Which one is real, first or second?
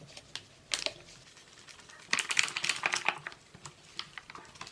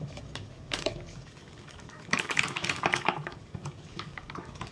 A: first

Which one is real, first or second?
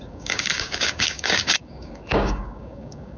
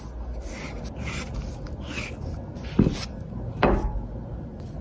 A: second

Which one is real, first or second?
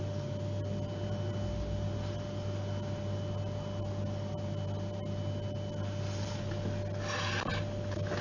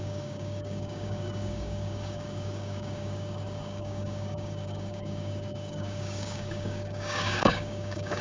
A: first